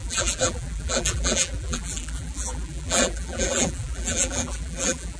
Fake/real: fake